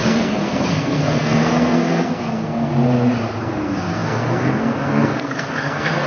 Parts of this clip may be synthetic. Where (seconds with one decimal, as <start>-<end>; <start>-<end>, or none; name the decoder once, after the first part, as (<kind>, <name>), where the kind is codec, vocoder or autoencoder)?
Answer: 0.0-2.7 (codec, SNAC); 3.4-6.1